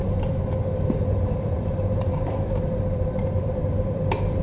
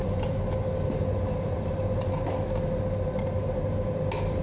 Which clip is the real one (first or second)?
second